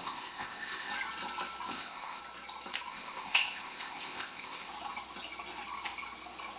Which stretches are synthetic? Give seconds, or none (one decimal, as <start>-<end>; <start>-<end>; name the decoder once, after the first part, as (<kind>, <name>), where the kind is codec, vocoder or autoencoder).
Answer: 0.0-0.9 (codec, ZipCodec); 1.7-2.2; 2.9-4.7